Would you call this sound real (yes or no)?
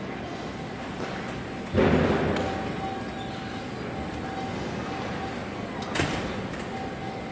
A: yes